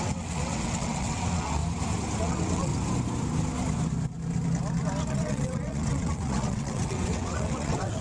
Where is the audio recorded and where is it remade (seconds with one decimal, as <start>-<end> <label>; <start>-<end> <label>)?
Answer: 0.0-1.6 remade; 1.6-2.2 recorded; 2.2-2.7 remade; 2.7-5.1 recorded; 5.1-8.0 remade